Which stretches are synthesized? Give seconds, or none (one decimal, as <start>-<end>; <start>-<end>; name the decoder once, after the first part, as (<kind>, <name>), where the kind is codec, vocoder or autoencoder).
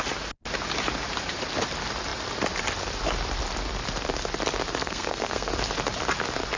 4.8-5.5 (codec, SNAC)